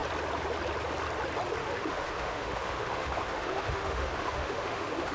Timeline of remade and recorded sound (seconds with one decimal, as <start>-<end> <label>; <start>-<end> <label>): 0.0-1.6 recorded; 1.6-5.1 remade